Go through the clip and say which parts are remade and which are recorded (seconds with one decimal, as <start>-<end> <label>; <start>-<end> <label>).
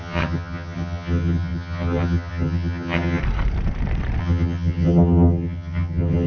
0.0-3.2 remade; 3.2-4.2 recorded; 4.2-6.3 remade